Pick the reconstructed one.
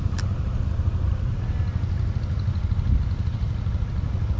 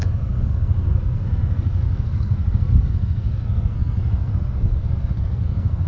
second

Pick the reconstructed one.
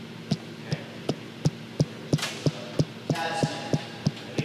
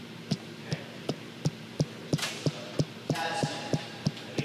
second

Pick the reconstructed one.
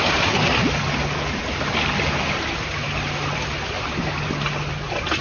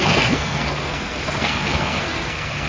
second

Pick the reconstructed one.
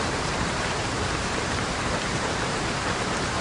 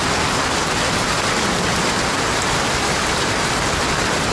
first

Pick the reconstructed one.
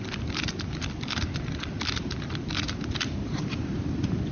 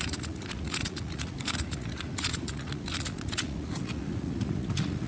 second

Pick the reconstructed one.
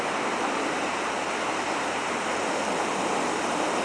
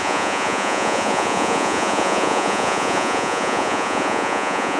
second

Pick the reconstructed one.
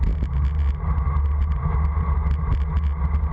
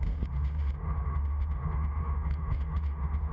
second